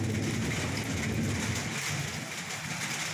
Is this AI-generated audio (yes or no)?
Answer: no